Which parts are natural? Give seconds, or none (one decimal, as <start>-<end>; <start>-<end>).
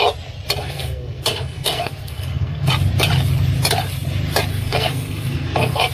0.0-0.6; 2.7-4.5